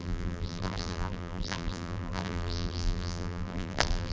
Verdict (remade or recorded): remade